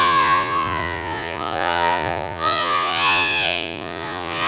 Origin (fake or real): fake